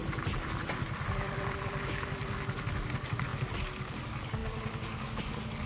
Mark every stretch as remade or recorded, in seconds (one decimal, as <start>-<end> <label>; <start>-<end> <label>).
0.0-1.1 recorded; 1.1-5.7 remade